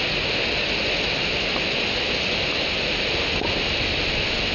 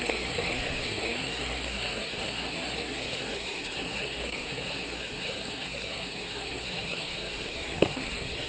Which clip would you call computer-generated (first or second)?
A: second